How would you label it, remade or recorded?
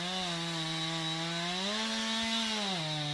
recorded